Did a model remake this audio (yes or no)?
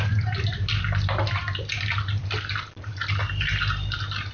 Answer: no